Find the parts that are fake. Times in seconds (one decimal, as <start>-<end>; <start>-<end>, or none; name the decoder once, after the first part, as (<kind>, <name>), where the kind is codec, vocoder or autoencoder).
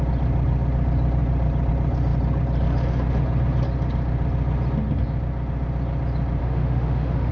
6.4-7.3 (autoencoder, DAC-VAE)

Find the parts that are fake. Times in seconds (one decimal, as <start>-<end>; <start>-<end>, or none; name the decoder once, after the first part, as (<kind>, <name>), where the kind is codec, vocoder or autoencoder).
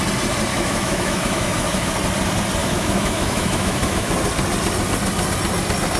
0.5-1.9 (autoencoder, DAC-VAE); 2.6-4.1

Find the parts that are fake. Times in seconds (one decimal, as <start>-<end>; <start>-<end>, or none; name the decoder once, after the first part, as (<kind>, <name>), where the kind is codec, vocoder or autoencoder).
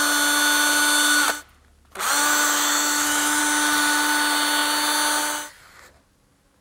2.2-3.4 (autoencoder, DAC-VAE)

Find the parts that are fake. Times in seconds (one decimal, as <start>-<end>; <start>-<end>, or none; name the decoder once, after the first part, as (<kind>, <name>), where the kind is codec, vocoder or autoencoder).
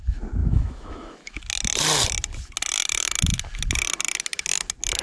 0.4-1.4 (autoencoder, DAC-VAE)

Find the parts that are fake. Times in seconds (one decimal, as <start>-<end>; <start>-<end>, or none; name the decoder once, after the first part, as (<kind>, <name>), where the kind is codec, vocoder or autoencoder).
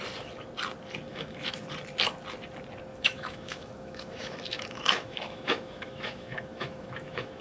1.1-1.7 (autoencoder, DAC-VAE); 2.9-7.4